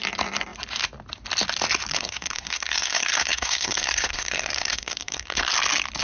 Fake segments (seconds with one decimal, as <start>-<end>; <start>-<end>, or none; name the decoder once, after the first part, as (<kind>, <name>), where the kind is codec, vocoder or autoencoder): 1.9-5.5 (codec, SNAC)